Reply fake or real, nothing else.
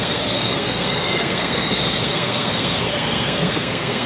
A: fake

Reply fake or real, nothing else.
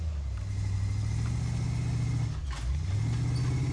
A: real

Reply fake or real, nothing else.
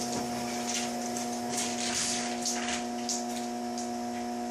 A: real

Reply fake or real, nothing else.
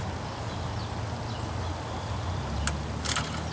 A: real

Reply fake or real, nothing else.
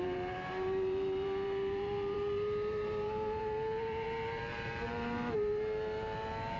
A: fake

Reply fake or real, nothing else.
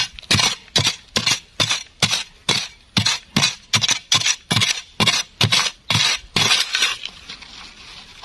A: real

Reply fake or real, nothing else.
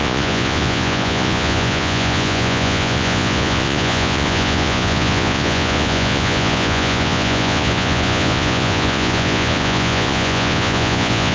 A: fake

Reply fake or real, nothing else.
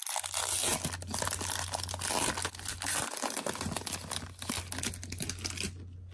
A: real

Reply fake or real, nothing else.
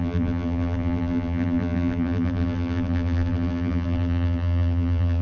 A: fake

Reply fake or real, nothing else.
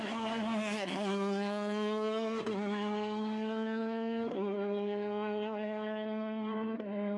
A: fake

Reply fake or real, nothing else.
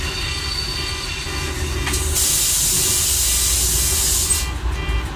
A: real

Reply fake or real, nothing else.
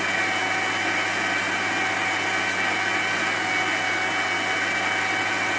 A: real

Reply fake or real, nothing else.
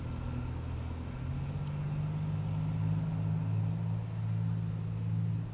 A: real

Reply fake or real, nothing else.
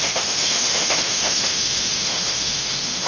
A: fake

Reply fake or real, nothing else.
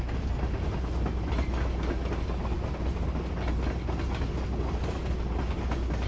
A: real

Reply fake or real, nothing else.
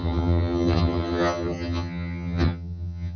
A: fake